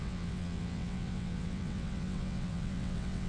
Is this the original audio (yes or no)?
no